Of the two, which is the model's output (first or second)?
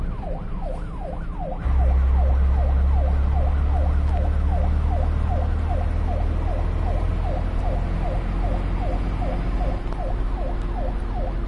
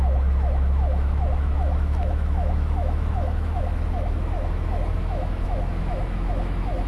second